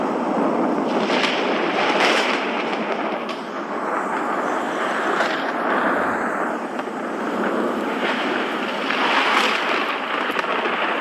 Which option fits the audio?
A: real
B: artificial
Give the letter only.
A